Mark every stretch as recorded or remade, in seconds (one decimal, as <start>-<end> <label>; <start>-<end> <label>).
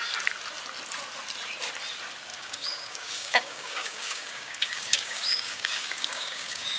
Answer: 0.0-2.3 recorded; 2.3-6.8 remade